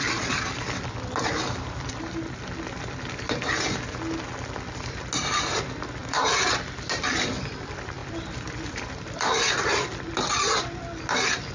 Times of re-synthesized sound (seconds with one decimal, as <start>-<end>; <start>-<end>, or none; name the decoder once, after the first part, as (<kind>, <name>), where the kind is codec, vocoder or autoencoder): 6.0-6.6 (vocoder, BigVGAN v2); 8.0-10.1